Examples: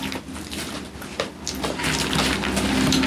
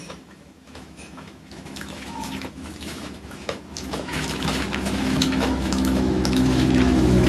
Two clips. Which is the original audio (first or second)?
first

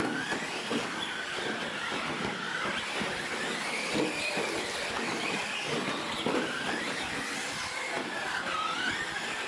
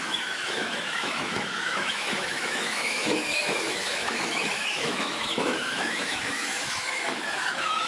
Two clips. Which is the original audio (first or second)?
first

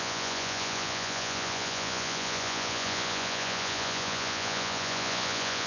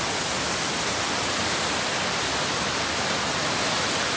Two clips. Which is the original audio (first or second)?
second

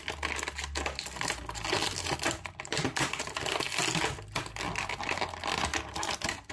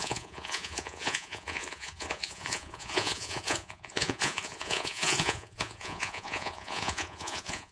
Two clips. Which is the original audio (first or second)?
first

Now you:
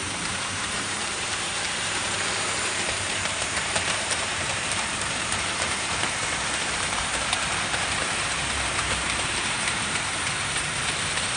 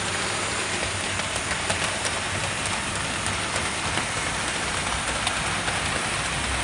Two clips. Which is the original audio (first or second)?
second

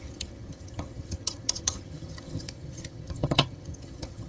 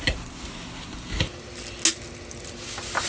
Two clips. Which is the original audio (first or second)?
second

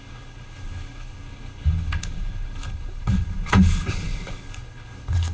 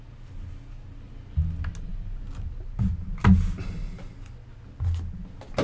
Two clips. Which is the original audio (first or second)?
second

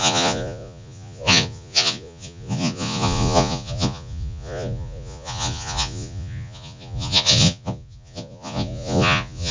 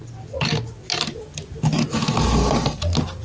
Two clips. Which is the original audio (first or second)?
second